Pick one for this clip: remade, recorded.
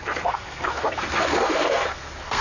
remade